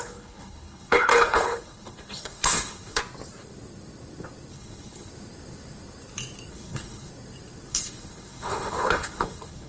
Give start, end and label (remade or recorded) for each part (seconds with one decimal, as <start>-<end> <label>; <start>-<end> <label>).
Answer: 0.0-3.0 remade; 3.0-4.5 recorded; 4.5-5.1 remade; 5.1-6.5 recorded; 6.5-7.1 remade; 7.1-7.7 recorded; 7.7-9.7 remade